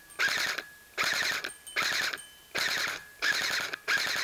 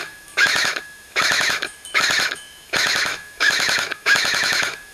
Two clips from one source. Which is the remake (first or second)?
second